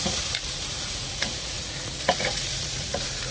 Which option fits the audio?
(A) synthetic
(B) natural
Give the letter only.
A